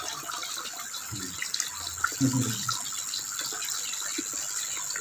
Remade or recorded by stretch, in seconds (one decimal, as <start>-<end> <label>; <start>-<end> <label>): 0.0-5.0 recorded